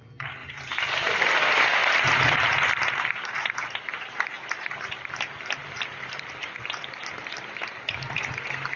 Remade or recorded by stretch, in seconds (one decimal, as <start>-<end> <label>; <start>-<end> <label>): 0.0-0.4 recorded; 0.4-1.2 remade; 1.2-1.8 recorded; 1.8-3.0 remade; 3.0-5.6 recorded; 5.6-8.8 remade